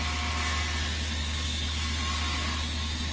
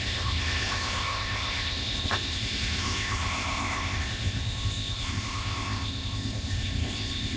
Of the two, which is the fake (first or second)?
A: second